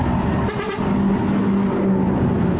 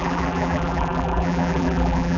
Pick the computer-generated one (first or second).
second